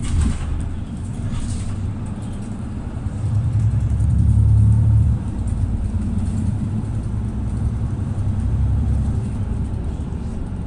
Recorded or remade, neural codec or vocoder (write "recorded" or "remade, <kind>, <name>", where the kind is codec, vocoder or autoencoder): remade, vocoder, BigVGAN v2